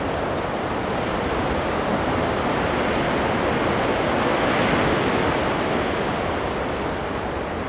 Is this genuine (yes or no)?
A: yes